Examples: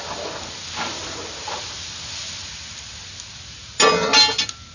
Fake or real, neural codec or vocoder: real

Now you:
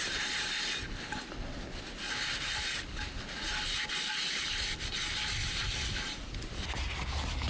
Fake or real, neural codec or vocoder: real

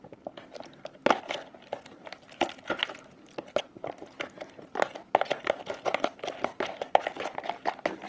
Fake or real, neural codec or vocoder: real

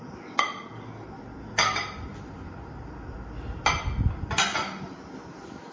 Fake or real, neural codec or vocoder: real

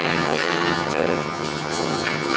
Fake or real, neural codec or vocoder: fake, vocoder, HiFi-GAN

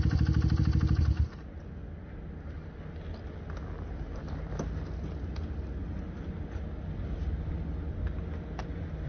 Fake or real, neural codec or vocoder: real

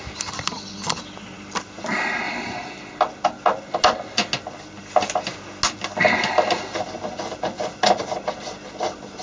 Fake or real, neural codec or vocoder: real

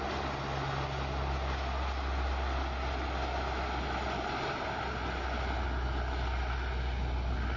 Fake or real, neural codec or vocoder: real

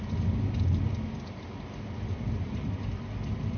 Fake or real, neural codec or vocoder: real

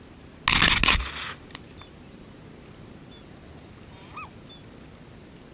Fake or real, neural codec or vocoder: real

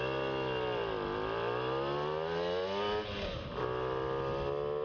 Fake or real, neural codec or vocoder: real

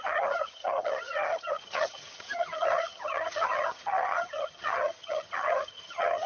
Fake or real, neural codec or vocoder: fake, vocoder, HiFi-GAN